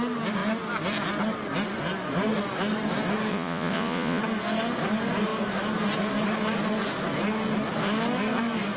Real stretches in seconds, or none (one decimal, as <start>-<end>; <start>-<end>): 0.0-3.3; 4.2-8.8